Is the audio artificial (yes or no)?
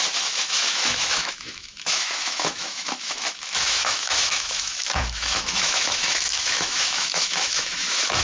yes